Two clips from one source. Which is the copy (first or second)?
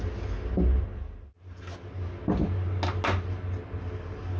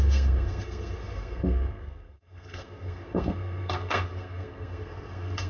second